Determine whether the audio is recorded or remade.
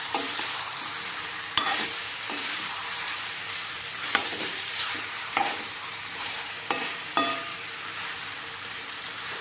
remade